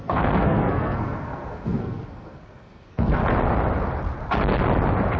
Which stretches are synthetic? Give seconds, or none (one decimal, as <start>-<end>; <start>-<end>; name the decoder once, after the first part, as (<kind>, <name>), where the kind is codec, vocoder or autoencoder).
0.0-3.2 (codec, SNAC)